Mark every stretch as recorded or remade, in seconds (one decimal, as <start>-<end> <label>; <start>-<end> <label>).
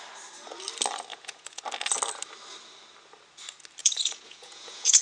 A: 0.0-1.1 recorded; 1.1-1.6 remade; 1.6-3.8 recorded; 3.8-5.0 remade